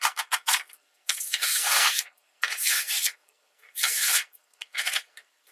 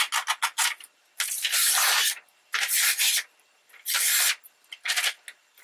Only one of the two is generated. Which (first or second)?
first